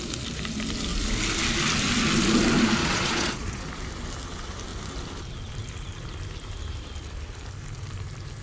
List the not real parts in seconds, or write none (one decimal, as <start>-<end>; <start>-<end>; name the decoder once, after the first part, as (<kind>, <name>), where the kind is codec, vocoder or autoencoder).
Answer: 2.8-3.6 (vocoder, Vocos)